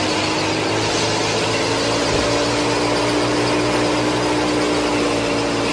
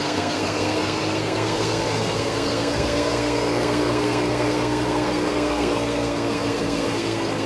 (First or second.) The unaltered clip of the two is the first